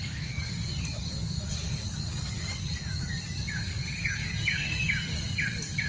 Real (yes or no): no